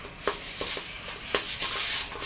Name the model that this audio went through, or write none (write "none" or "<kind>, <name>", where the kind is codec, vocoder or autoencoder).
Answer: none